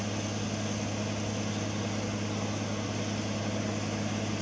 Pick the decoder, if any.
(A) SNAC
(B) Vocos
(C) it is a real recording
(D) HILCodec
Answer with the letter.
C